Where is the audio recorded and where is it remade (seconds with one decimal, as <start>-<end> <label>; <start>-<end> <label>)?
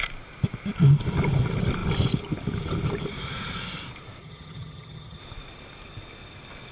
0.0-4.2 recorded; 4.2-5.2 remade; 5.2-6.7 recorded